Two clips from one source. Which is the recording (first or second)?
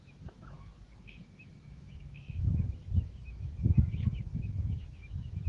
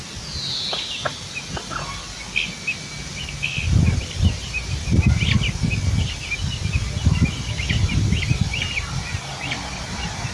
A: second